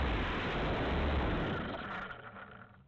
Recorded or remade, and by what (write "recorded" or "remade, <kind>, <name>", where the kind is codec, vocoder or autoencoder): recorded